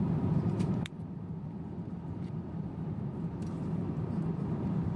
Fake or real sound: fake